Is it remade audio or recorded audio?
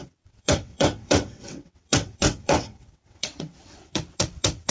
remade